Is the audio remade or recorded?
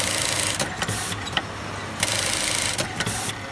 recorded